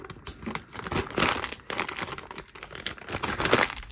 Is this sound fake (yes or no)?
no